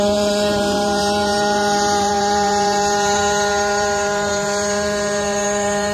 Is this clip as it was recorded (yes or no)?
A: no